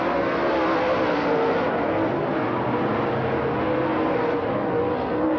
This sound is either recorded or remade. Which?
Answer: recorded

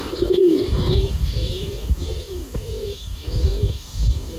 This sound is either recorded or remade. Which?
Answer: remade